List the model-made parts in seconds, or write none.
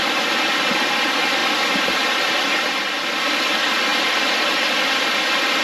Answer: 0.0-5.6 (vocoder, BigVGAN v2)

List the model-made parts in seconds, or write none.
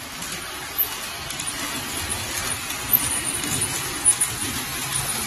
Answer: none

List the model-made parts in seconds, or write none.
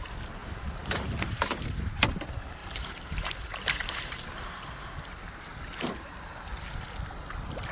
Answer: 0.4-1.9 (vocoder, BigVGAN v2); 2.6-4.3; 5.5-6.0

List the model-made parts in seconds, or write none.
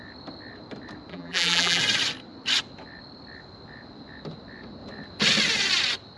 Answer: 1.1-1.8 (vocoder, BigVGAN v2)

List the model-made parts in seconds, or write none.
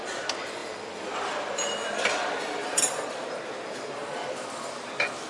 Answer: 0.6-2.8 (vocoder, BigVGAN v2); 4.0-4.6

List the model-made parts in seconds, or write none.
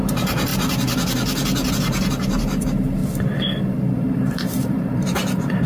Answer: 0.0-0.5 (vocoder, BigVGAN v2); 1.7-3.0; 3.6-5.7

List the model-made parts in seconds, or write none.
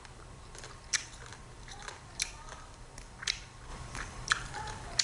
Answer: 0.0-5.0 (vocoder, BigVGAN v2)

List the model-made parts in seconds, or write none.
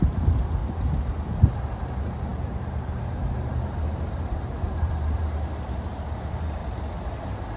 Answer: 0.0-0.6 (vocoder, BigVGAN v2); 1.4-6.6